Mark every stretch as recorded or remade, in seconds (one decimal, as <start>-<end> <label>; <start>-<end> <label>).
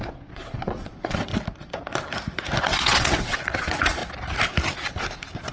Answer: 0.0-1.3 remade; 1.3-2.6 recorded; 2.6-4.0 remade; 4.0-5.5 recorded